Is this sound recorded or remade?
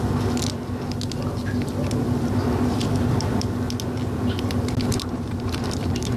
recorded